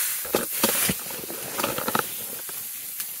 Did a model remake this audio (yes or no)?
no